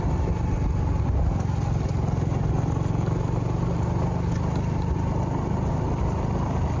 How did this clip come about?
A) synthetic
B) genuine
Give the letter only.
B